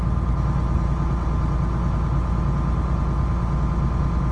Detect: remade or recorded recorded